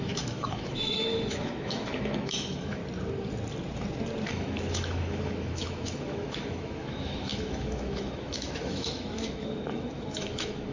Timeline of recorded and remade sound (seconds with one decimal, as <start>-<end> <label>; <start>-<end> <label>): 0.0-2.8 remade; 2.8-4.3 recorded; 4.3-10.7 remade